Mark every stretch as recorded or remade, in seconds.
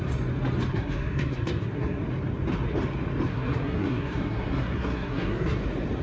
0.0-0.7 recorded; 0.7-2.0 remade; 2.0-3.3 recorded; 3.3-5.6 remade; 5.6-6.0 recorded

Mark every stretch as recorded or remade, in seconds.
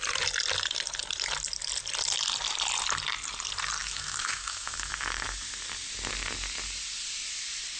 0.0-3.8 recorded; 3.8-4.9 remade; 4.9-7.8 recorded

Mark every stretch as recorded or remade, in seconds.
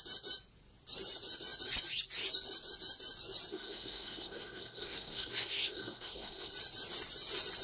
0.0-3.5 recorded; 3.5-6.5 remade; 6.5-7.6 recorded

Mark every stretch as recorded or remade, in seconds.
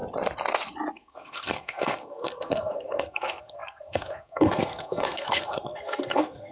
0.0-0.9 recorded; 0.9-6.5 remade